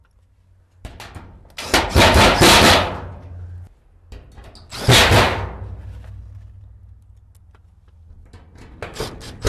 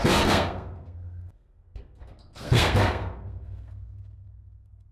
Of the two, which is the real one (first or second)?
first